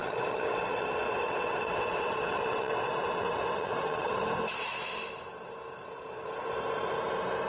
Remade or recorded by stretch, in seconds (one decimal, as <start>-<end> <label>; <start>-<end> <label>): 0.0-4.2 remade; 4.2-7.5 recorded